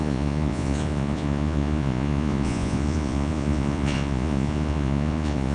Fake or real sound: fake